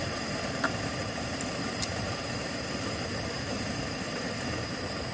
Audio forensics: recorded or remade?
remade